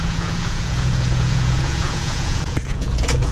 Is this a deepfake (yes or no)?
yes